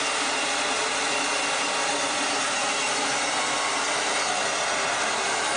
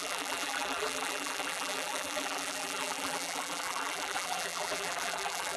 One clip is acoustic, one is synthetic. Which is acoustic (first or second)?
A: first